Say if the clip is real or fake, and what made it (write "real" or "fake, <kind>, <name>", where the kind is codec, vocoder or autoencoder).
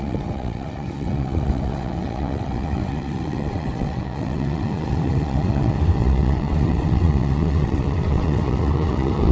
fake, vocoder, WaveNeXt